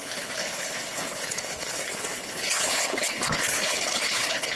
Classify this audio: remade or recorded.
remade